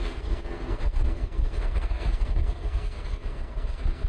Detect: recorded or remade remade